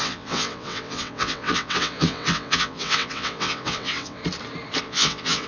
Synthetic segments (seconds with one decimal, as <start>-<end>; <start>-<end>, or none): 0.0-4.2; 4.8-5.5